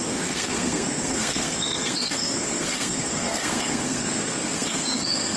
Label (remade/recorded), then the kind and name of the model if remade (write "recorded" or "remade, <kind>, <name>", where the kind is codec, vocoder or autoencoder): remade, codec, SNAC